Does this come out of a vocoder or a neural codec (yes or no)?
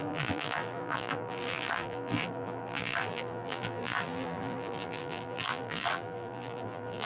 yes